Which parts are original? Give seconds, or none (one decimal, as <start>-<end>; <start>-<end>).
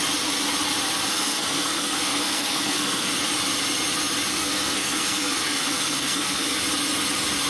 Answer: 0.0-1.1; 3.1-4.3; 6.6-7.5